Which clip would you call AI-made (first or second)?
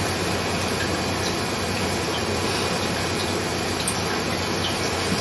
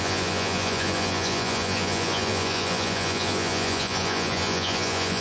second